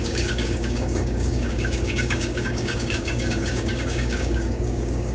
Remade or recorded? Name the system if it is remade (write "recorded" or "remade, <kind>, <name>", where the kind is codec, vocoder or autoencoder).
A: remade, codec, DAC